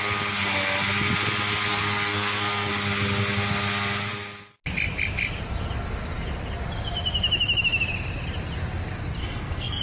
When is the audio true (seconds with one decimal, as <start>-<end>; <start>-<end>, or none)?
0.0-1.7; 2.7-9.2